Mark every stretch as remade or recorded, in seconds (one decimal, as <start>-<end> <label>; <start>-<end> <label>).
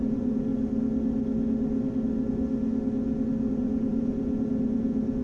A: 0.0-0.5 remade; 0.5-3.5 recorded; 3.5-5.2 remade